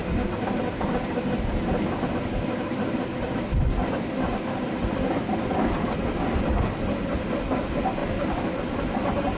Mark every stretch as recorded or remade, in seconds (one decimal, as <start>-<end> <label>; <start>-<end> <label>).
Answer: 0.0-9.4 recorded